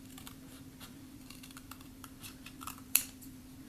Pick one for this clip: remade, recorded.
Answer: remade